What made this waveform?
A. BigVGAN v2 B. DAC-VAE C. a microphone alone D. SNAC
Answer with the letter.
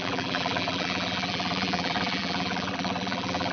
A